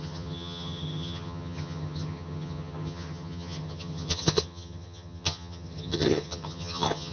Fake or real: fake